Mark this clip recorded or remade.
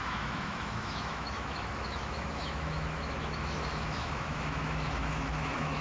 remade